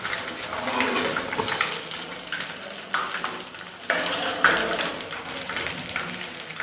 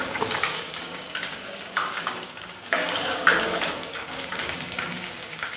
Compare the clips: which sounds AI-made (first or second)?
second